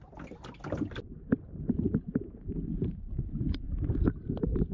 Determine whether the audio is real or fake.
real